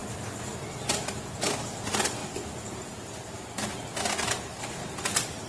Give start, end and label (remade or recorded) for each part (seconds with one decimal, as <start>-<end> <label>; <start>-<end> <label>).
0.0-5.5 recorded

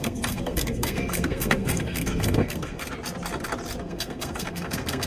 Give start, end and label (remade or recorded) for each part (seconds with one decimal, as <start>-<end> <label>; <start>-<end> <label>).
0.0-2.8 remade; 2.8-3.8 recorded; 3.8-5.1 remade

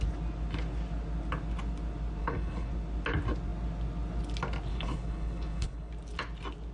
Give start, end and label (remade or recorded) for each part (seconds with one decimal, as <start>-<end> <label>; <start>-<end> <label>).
0.0-2.2 recorded; 2.2-2.7 remade; 2.7-4.7 recorded; 4.7-5.9 remade; 5.9-6.7 recorded